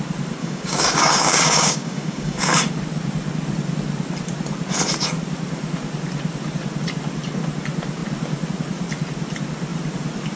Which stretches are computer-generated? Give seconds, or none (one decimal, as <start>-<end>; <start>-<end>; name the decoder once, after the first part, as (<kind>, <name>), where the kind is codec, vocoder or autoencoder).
0.4-2.6 (codec, DAC)